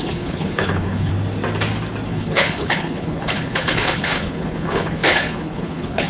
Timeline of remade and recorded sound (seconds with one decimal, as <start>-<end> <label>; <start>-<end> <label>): 0.0-1.1 remade; 1.1-2.1 recorded; 2.1-6.1 remade